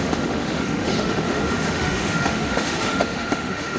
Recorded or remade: remade